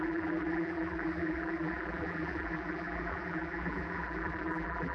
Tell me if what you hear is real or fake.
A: fake